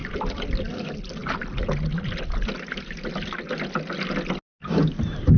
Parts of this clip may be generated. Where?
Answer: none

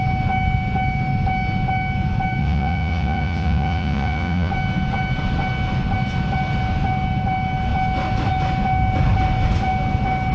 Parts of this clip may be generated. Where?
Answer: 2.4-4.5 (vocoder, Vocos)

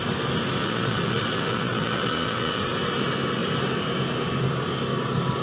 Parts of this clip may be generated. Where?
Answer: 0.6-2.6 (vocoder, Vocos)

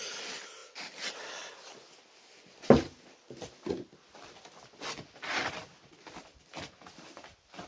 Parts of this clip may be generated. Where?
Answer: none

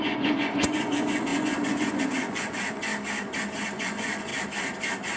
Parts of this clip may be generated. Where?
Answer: 0.0-2.9 (vocoder, Vocos); 3.7-4.3

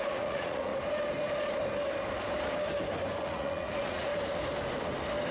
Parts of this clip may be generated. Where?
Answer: 0.0-0.7 (vocoder, Vocos); 3.2-4.1